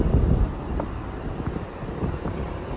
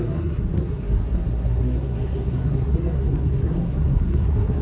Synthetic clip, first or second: second